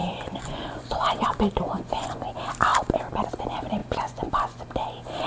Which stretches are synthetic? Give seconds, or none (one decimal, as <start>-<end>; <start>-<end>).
0.0-2.3; 3.8-4.6